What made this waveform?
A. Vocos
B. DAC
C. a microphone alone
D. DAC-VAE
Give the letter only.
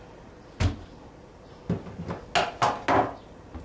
C